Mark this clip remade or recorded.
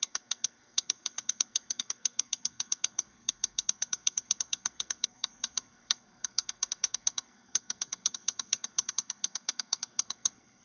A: remade